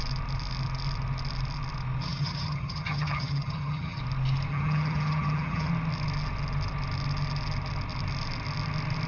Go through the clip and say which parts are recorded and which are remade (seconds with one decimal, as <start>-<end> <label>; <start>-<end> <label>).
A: 0.0-2.0 recorded; 2.0-4.0 remade; 4.0-4.5 recorded; 4.5-5.7 remade; 5.7-9.1 recorded